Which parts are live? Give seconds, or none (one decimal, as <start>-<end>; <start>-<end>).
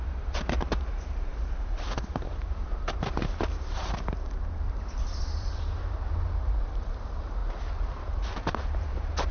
7.4-8.3